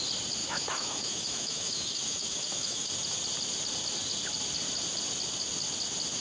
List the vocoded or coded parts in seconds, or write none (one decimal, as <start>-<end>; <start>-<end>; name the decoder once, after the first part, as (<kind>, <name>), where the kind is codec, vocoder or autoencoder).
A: 0.4-2.9 (autoencoder, DAC-VAE)